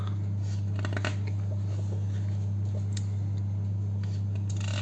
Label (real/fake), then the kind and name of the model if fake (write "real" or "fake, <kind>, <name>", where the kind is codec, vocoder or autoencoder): real